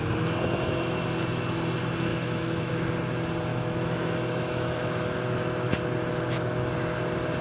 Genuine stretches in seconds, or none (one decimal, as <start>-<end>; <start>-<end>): 0.0-2.1; 2.7-3.5; 5.7-7.4